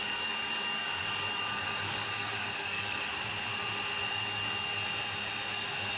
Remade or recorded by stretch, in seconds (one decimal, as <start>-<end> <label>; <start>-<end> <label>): 0.0-3.1 remade; 3.1-4.1 recorded; 4.1-4.7 remade; 4.7-5.5 recorded; 5.5-6.0 remade